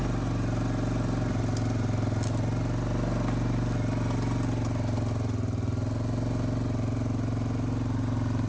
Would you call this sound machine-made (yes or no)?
no